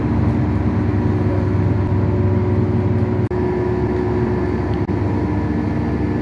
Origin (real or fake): real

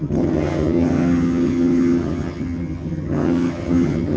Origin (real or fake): fake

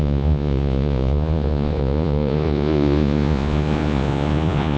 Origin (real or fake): fake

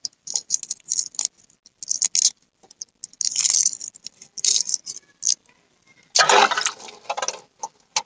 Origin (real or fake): real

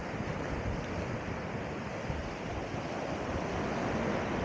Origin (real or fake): real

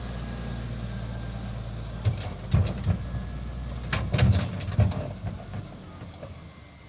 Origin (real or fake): real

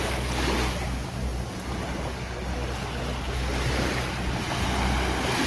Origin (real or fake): real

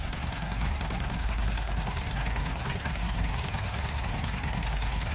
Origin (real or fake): fake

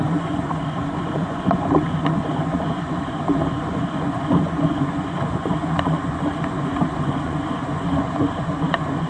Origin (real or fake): fake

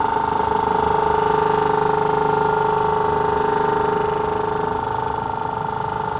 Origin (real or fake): real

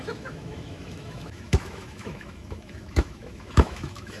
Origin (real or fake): fake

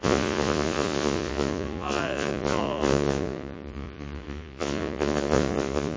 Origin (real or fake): fake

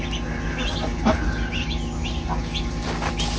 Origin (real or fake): real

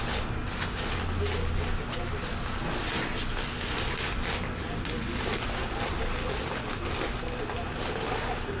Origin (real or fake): real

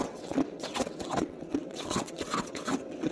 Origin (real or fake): fake